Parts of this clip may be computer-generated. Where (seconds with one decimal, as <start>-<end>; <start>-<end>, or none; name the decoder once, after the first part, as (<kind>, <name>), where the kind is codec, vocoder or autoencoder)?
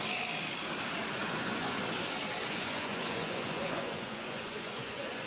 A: 1.2-1.8 (vocoder, Vocos); 2.4-5.3